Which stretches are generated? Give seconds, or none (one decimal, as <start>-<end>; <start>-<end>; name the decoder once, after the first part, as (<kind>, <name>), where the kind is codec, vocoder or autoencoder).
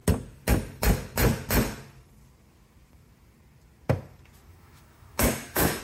4.5-5.8 (autoencoder, DAC-VAE)